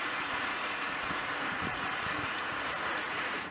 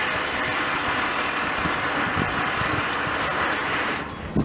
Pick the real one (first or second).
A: second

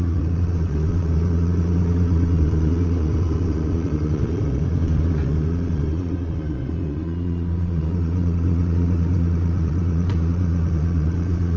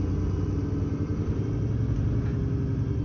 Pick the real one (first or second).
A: second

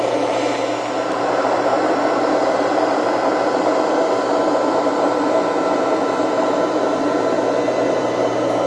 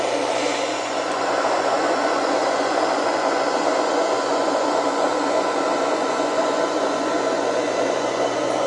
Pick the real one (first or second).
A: first